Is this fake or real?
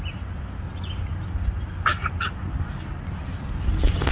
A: real